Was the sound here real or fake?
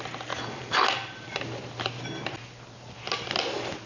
real